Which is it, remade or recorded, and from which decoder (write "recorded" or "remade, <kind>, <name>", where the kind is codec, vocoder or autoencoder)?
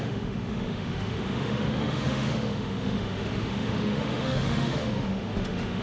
remade, autoencoder, DAC-VAE